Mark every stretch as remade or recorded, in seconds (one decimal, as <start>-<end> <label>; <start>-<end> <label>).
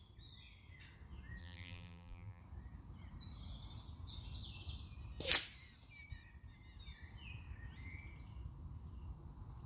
0.0-1.4 recorded; 1.4-2.4 remade; 2.4-9.7 recorded